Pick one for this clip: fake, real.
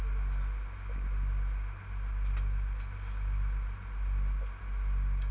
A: real